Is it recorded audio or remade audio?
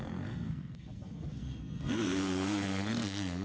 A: remade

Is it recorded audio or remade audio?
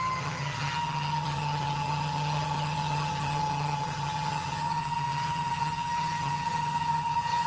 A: remade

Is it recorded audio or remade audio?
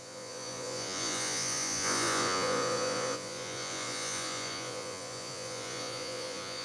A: remade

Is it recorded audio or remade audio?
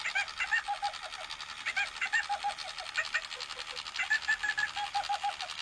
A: recorded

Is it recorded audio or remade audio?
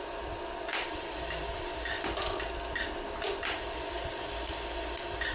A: recorded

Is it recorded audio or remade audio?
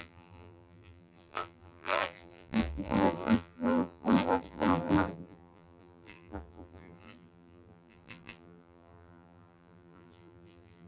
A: remade